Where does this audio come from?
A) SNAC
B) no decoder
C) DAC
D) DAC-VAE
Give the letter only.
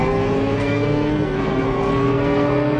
A